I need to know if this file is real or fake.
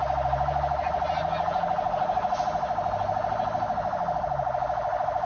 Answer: real